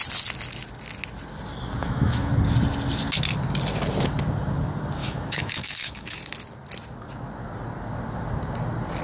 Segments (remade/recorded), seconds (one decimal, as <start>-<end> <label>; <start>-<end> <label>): 0.0-1.8 recorded; 1.8-2.3 remade; 2.3-5.0 recorded; 5.0-6.2 remade; 6.2-9.0 recorded